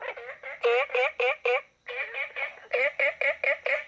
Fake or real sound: real